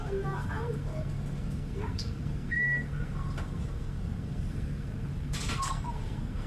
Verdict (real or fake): fake